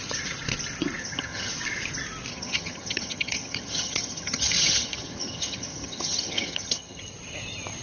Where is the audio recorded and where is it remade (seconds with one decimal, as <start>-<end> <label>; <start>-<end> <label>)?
0.0-1.0 recorded; 1.0-1.5 remade; 1.5-2.3 recorded; 2.3-7.0 remade; 7.0-7.8 recorded